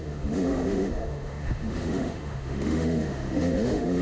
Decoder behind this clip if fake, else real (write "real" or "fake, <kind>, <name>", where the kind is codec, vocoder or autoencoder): fake, autoencoder, DAC-VAE